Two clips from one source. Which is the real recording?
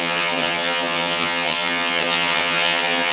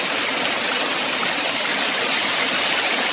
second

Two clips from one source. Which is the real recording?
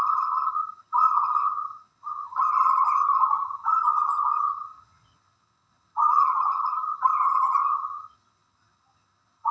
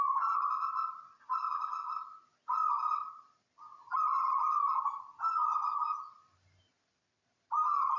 second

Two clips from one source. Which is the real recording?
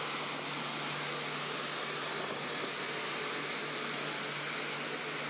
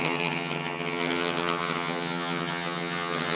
first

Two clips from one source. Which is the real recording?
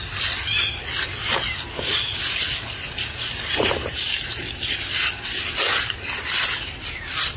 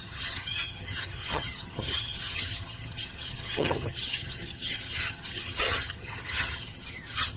first